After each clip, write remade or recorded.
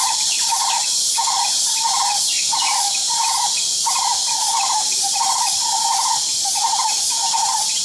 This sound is remade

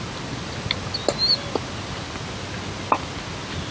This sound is recorded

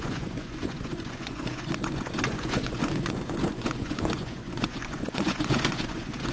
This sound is remade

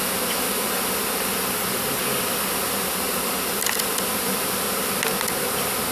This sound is recorded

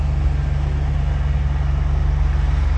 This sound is recorded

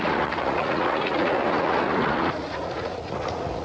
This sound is remade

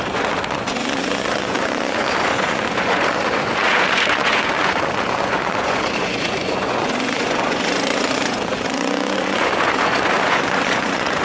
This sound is remade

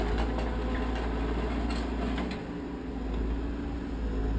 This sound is recorded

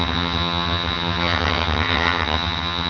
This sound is remade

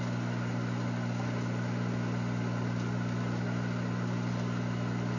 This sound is recorded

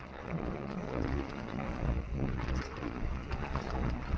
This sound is remade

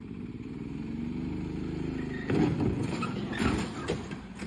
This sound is recorded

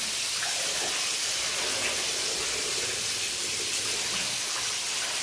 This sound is recorded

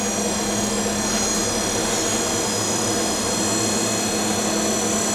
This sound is recorded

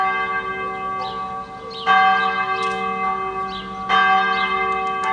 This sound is recorded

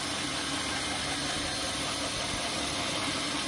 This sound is recorded